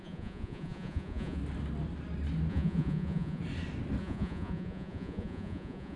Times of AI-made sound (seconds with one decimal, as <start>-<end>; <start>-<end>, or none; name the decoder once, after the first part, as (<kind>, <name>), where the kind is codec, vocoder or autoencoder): 0.0-1.4 (vocoder, Vocos); 2.5-3.4; 4.0-6.0